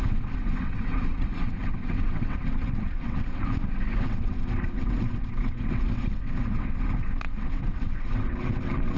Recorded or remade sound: remade